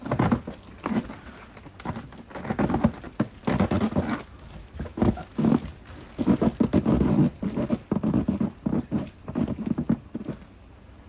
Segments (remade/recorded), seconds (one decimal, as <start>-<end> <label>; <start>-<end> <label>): 0.0-4.6 recorded; 4.6-5.5 remade; 5.5-11.1 recorded